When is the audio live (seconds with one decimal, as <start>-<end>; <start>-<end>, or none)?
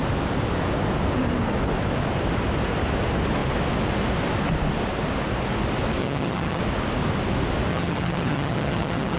0.0-6.0; 6.6-7.7